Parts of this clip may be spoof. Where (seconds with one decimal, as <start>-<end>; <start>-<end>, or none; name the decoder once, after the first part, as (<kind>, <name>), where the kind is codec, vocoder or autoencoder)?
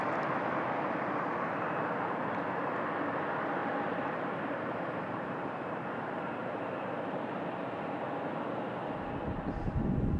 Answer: 3.6-7.9 (vocoder, BigVGAN v2)